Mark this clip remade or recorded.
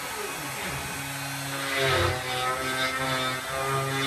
recorded